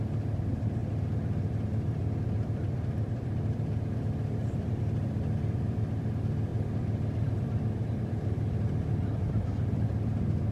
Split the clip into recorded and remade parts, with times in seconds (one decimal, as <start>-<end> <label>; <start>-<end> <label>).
0.0-0.8 recorded; 0.8-3.7 remade; 3.7-4.4 recorded; 4.4-6.1 remade; 6.1-6.5 recorded; 6.5-9.3 remade; 9.3-10.5 recorded